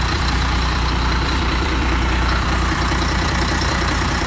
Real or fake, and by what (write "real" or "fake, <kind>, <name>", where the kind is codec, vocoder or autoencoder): fake, vocoder, BigVGAN v2